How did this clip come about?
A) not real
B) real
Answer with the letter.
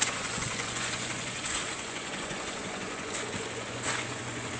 A